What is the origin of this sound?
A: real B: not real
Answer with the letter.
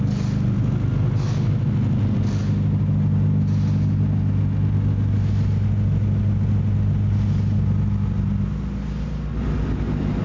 A